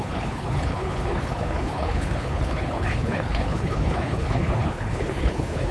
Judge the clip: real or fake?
fake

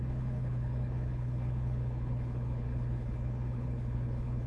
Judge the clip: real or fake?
fake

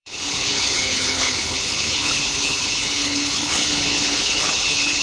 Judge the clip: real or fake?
fake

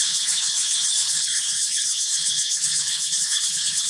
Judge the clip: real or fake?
fake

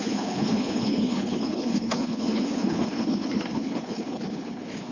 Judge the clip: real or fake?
fake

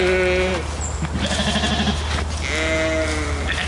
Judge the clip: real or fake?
real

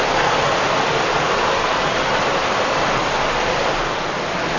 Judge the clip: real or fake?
real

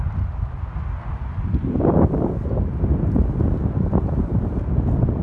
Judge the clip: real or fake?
real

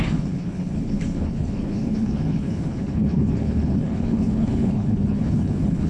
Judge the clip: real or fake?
fake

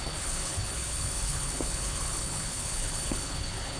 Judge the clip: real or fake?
fake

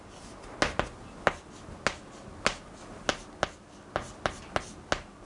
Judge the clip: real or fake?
real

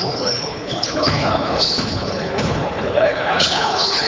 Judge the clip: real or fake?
fake